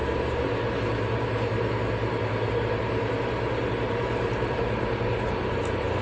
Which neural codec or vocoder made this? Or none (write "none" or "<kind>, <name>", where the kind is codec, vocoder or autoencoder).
vocoder, BigVGAN v2